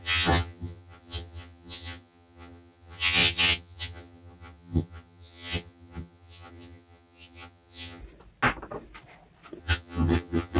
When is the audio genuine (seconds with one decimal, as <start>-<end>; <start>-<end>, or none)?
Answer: 8.0-9.6

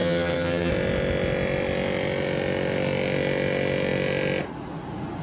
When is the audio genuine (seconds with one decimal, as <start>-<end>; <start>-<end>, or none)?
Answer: 0.7-5.2

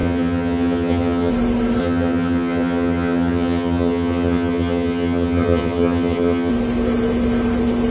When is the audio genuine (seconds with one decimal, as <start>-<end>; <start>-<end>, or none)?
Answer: 1.3-1.8; 6.5-7.9

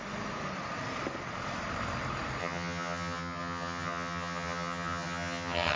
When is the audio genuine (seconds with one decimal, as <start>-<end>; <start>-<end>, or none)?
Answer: 0.0-2.4